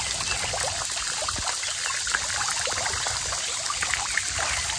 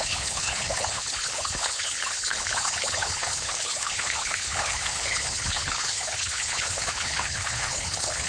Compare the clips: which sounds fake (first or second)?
second